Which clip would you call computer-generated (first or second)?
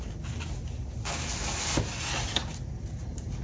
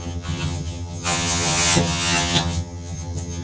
second